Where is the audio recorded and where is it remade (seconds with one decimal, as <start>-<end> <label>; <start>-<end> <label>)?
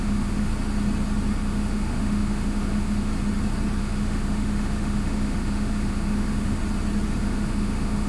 0.0-0.5 remade; 0.5-1.4 recorded; 1.4-3.1 remade; 3.1-3.8 recorded; 3.8-6.6 remade; 6.6-7.2 recorded; 7.2-8.1 remade